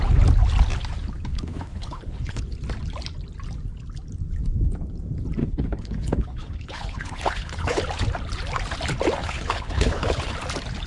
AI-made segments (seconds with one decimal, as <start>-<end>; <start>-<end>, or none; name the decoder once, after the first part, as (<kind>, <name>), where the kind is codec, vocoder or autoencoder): 1.3-2.4 (codec, HILCodec); 5.4-7.8; 9.2-10.3

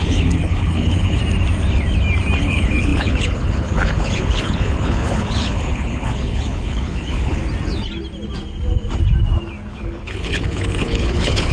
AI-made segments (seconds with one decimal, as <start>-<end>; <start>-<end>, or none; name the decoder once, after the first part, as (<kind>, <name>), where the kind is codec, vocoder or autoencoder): 0.0-1.2 (codec, HILCodec); 2.4-7.4; 9.7-11.5

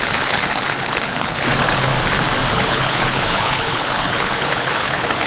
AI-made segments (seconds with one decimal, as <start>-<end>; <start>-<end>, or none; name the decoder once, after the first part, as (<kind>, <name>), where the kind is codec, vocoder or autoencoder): 0.0-1.9 (codec, HILCodec); 2.5-5.3

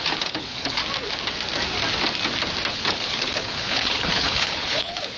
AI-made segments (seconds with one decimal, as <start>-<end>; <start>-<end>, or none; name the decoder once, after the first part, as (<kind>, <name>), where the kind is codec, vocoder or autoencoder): 0.0-0.8 (codec, HILCodec); 2.7-5.2

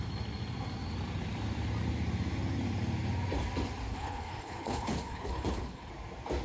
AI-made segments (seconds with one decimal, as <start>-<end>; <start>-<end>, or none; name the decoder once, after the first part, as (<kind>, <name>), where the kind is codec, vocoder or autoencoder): 3.9-5.9 (codec, HILCodec)

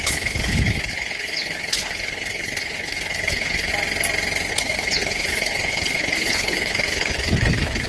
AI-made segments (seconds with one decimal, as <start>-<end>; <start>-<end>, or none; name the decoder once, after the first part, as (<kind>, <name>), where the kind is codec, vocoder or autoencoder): 0.0-3.7 (codec, HILCodec); 4.5-7.9

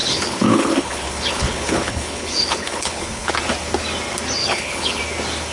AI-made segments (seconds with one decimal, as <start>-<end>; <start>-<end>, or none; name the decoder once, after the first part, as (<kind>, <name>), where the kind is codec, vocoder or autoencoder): 0.0-3.3 (codec, HILCodec); 4.4-5.0

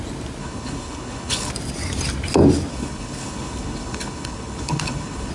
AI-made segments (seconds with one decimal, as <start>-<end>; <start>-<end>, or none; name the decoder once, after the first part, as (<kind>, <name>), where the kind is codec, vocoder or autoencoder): 0.4-1.5 (codec, HILCodec); 2.7-5.3